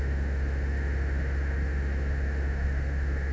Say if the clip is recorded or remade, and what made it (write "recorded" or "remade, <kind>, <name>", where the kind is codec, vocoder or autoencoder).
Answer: remade, autoencoder, DAC-VAE